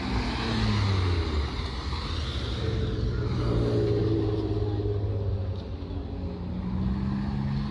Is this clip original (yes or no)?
yes